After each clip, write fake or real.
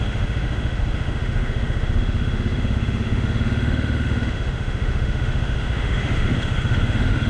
fake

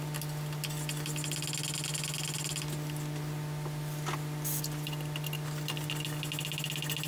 real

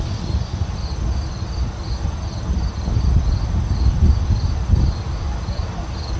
real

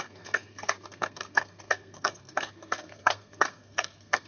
fake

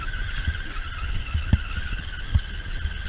real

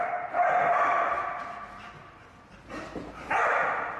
real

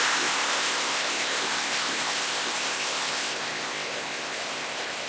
fake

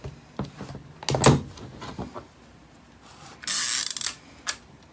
real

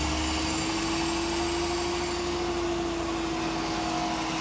real